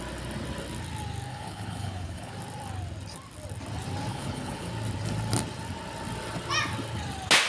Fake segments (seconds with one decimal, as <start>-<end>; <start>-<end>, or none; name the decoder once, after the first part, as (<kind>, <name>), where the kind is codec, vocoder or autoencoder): 1.3-2.3 (codec, HILCodec); 4.1-4.7

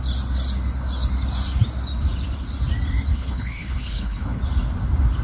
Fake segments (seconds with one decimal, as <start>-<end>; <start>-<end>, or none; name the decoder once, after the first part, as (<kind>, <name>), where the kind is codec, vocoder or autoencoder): 3.1-4.4 (codec, HILCodec)

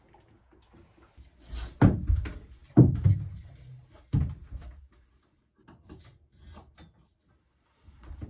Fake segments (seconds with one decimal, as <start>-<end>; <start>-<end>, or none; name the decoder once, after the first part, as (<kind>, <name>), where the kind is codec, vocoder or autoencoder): none

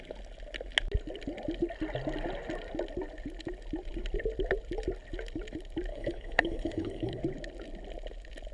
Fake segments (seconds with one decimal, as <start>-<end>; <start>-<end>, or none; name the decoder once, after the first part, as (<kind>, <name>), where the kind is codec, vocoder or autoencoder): 5.9-7.2 (codec, HILCodec)